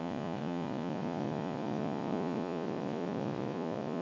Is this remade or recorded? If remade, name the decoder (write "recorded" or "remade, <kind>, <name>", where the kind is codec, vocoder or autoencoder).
remade, vocoder, Vocos